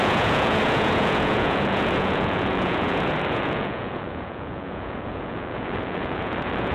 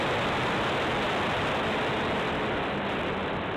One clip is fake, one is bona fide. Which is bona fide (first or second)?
second